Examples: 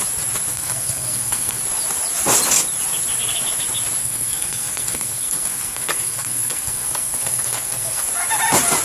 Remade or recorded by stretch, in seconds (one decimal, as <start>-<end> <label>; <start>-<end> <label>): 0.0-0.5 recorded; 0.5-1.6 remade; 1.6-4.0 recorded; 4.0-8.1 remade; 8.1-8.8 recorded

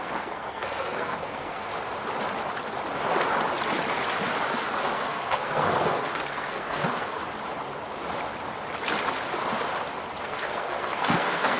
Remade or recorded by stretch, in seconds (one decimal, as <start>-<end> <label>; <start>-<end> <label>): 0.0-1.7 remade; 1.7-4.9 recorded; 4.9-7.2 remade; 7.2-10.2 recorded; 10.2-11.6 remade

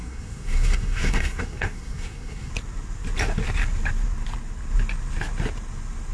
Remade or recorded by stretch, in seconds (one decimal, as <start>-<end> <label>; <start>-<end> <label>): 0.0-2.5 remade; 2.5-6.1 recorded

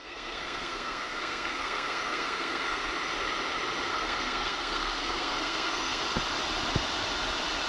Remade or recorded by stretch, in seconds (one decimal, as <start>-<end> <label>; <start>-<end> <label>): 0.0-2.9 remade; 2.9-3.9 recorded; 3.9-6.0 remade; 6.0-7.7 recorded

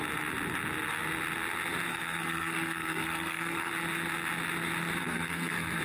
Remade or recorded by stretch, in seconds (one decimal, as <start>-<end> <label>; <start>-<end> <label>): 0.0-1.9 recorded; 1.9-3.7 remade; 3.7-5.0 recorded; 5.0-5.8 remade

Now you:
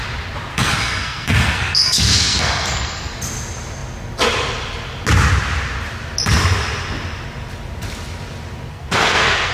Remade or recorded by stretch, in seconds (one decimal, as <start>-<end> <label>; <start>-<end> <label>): 0.0-0.5 recorded; 0.5-3.1 remade; 3.1-8.7 recorded; 8.7-9.5 remade